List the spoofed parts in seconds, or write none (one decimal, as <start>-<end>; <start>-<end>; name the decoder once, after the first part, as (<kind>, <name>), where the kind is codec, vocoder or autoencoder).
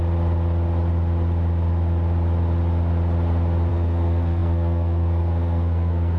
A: 3.7-6.2 (codec, SNAC)